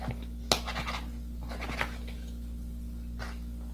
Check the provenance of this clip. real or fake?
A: real